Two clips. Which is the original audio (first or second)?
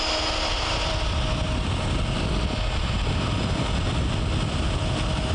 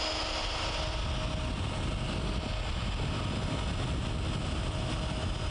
second